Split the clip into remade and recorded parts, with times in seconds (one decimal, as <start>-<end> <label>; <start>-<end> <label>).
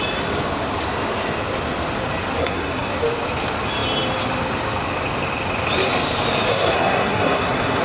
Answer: 0.0-2.4 recorded; 2.4-2.9 remade; 2.9-6.5 recorded; 6.5-7.8 remade